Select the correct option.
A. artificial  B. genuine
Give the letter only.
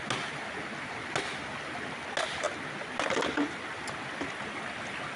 B